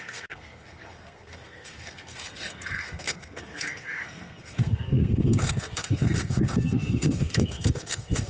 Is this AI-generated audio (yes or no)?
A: yes